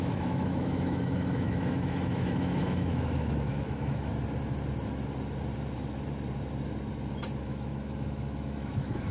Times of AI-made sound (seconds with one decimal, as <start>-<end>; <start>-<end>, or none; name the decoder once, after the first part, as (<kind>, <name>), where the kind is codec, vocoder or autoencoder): 0.0-4.1 (autoencoder, DAC-VAE); 7.4-9.1